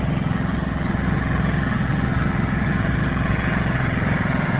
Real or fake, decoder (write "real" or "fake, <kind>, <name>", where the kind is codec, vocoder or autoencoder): fake, vocoder, HiFi-GAN